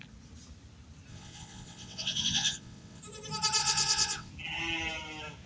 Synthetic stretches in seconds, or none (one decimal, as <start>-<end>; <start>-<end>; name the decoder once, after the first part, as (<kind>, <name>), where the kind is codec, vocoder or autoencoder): 1.1-3.0 (vocoder, WaveNeXt); 3.6-4.3